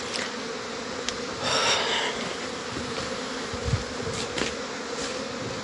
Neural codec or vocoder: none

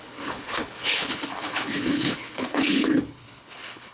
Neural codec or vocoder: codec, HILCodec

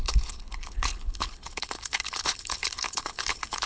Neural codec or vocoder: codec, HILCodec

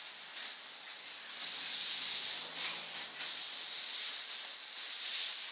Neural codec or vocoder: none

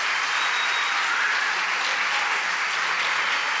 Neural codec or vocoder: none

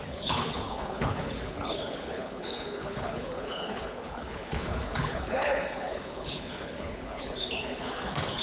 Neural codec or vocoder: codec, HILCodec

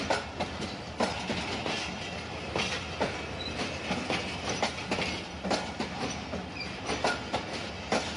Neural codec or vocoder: none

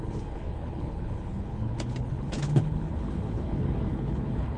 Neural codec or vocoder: codec, HILCodec